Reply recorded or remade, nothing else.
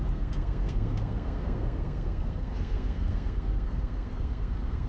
remade